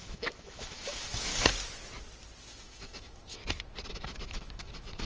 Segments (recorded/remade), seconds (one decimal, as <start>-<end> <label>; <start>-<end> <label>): 0.0-1.3 remade; 1.3-2.4 recorded; 2.4-3.4 remade; 3.4-3.9 recorded; 3.9-5.0 remade